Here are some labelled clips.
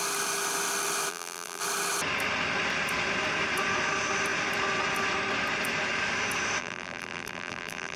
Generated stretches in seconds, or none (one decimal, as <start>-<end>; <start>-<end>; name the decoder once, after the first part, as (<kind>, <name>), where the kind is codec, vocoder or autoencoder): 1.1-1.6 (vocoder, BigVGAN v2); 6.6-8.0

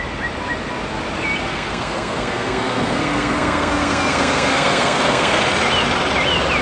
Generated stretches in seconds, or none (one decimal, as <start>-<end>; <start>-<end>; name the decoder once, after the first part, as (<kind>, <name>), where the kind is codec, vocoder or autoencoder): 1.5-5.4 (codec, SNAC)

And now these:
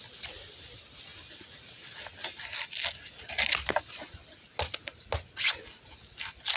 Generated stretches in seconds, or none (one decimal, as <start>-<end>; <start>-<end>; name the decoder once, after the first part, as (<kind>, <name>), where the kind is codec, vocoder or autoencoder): none

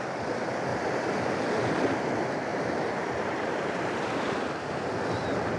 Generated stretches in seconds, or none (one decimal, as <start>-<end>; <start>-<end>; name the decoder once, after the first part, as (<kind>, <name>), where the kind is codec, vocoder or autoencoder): 0.7-1.3 (vocoder, BigVGAN v2); 2.5-4.5

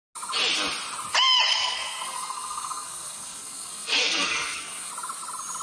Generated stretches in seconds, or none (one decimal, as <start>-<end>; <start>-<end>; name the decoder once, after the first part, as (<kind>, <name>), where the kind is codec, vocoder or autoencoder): 1.5-4.9 (codec, SNAC)

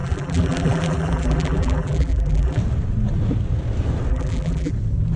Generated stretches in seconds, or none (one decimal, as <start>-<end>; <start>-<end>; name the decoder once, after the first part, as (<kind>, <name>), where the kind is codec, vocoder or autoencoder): 0.0-2.6 (vocoder, BigVGAN v2); 4.1-4.7

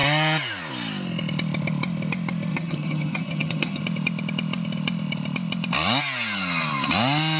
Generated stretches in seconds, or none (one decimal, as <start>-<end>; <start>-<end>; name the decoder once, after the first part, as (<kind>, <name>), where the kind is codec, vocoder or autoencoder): 2.5-3.8 (vocoder, HiFi-GAN)

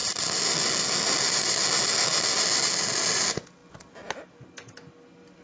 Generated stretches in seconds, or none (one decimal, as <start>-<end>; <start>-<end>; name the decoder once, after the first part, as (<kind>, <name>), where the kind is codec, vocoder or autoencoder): none